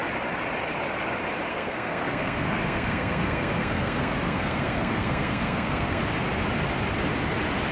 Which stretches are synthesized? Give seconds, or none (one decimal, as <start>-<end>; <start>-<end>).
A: 1.5-6.0